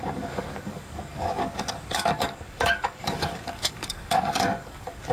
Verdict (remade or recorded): remade